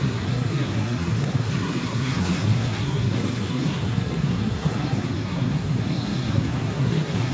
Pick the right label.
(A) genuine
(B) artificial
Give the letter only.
B